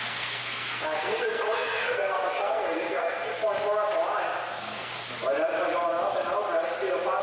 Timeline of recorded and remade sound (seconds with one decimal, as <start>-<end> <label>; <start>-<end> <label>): 0.0-3.3 remade; 3.3-4.5 recorded; 4.5-4.9 remade; 4.9-7.2 recorded